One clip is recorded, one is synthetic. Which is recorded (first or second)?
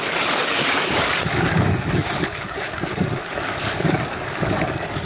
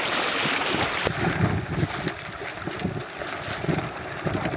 second